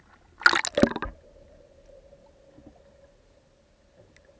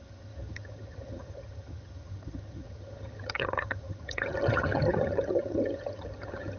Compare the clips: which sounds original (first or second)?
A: first